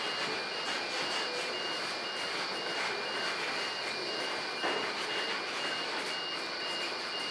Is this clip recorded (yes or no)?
yes